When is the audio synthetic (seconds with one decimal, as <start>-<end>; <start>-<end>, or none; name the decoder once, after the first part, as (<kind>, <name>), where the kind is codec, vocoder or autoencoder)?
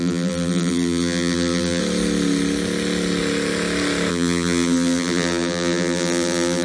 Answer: 0.0-1.8 (vocoder, BigVGAN v2); 4.1-6.6